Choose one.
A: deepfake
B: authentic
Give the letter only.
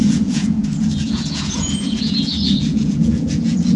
A